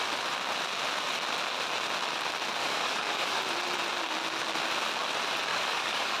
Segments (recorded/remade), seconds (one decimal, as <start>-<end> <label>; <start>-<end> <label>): 0.0-2.6 recorded; 2.6-3.4 remade; 3.4-5.5 recorded; 5.5-6.2 remade